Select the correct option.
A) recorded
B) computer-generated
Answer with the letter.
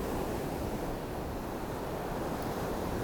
A